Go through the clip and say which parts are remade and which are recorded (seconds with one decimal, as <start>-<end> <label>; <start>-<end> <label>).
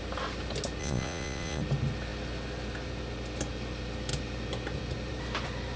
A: 0.0-0.8 recorded; 0.8-1.6 remade; 1.6-5.8 recorded